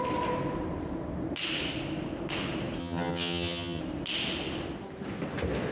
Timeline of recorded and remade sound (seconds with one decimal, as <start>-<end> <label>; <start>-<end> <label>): 0.0-2.8 recorded; 2.8-3.8 remade; 3.8-5.7 recorded